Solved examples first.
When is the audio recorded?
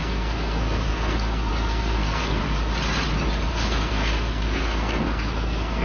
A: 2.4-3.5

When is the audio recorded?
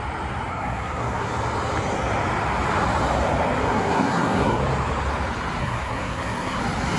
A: 0.0-0.5; 1.3-3.6; 4.6-5.6; 6.6-7.0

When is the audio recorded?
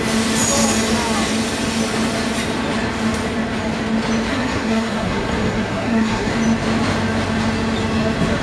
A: 0.0-4.3; 6.3-8.4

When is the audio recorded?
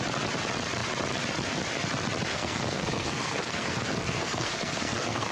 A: 0.0-2.3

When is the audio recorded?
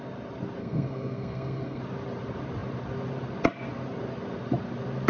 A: 0.0-0.6; 1.8-5.1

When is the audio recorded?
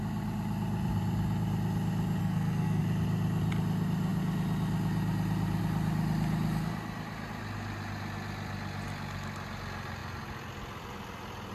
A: 0.0-2.2; 2.8-11.5